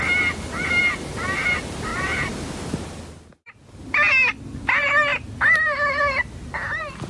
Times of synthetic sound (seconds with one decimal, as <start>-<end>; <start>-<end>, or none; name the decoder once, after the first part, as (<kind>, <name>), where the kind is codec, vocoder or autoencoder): none